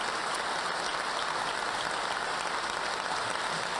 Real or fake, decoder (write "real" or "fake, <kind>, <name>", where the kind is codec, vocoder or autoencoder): real